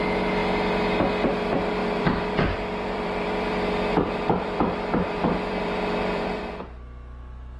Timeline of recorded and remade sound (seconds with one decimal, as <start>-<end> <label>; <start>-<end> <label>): 0.0-1.8 recorded; 1.8-6.4 remade; 6.4-7.6 recorded